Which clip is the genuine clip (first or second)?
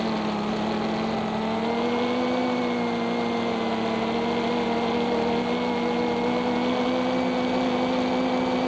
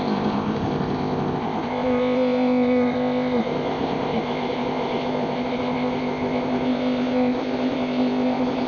first